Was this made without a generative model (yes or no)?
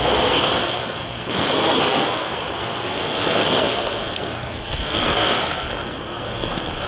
no